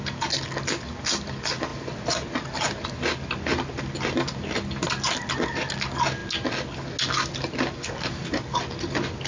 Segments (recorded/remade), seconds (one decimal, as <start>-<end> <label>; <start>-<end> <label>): 0.0-9.3 recorded